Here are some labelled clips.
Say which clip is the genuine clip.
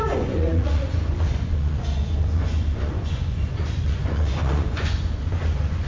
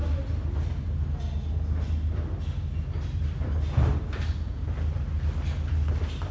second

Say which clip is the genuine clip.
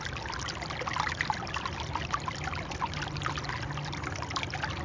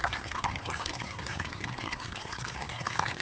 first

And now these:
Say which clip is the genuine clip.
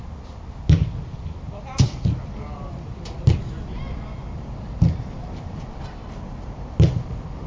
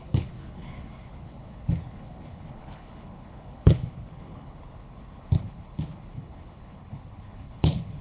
first